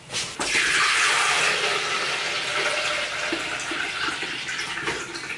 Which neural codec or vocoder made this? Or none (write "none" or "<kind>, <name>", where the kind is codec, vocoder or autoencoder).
none